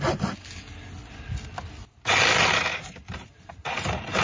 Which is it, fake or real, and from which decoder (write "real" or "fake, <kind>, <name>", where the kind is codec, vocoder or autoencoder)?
real